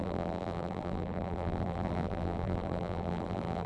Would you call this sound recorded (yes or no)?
no